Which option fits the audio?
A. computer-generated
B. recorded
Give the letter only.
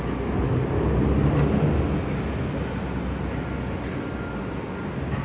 B